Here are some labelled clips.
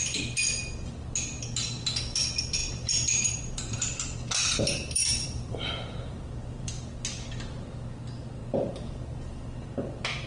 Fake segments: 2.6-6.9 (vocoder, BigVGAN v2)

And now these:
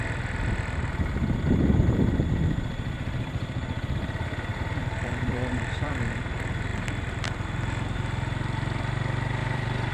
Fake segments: 4.5-5.9 (vocoder, BigVGAN v2); 9.4-9.9

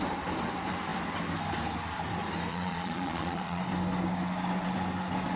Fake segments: 2.5-3.6 (vocoder, Vocos)

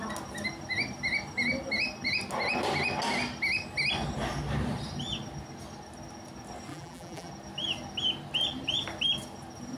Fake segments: 6.7-7.3 (vocoder, BigVGAN v2)

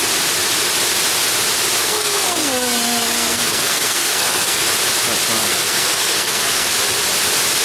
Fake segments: 1.8-4.6 (codec, SNAC); 5.4-6.7

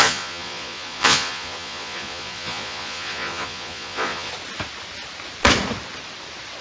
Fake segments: 0.0-4.3 (vocoder, Vocos)

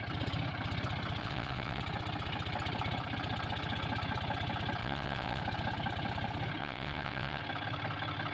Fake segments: 1.2-1.8 (vocoder, WaveNeXt); 4.8-5.4; 6.6-7.4

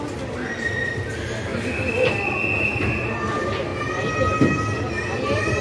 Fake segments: none